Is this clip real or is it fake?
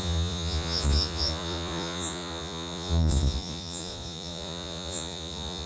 fake